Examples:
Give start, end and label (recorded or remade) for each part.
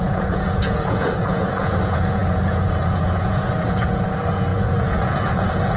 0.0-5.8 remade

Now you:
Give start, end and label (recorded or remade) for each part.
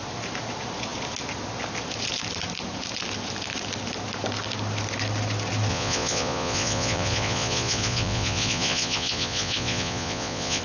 0.0-5.7 recorded; 5.7-10.6 remade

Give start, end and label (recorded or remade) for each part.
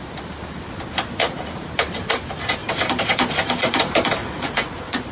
0.0-1.2 recorded; 1.2-1.7 remade; 1.7-4.2 recorded; 4.2-5.1 remade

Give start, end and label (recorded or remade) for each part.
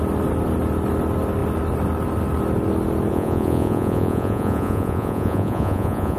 0.0-3.1 recorded; 3.1-6.2 remade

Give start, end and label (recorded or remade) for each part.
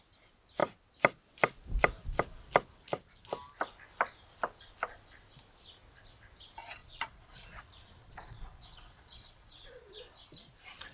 0.0-6.8 recorded; 6.8-7.6 remade; 7.6-8.0 recorded; 8.0-10.0 remade; 10.0-10.9 recorded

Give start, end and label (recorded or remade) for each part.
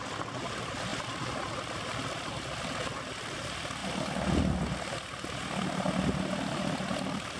0.0-7.4 recorded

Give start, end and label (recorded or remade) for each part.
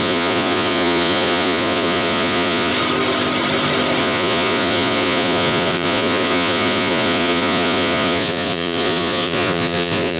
0.0-2.7 remade; 2.7-4.0 recorded; 4.0-10.2 remade